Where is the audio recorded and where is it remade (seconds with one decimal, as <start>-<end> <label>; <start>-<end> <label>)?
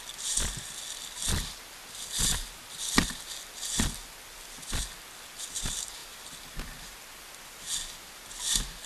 0.0-8.9 recorded